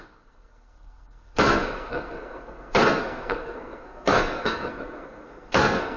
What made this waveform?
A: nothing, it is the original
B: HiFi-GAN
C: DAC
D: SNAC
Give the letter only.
D